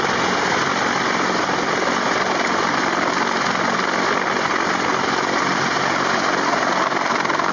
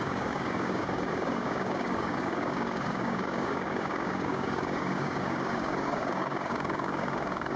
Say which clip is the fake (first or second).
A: second